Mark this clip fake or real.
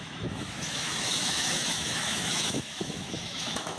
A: fake